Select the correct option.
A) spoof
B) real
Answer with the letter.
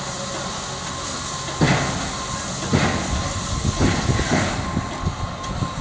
B